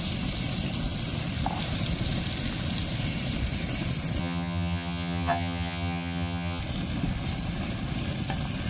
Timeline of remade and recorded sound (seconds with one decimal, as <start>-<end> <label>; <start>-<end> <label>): 0.0-4.2 recorded; 4.2-6.6 remade; 6.6-8.7 recorded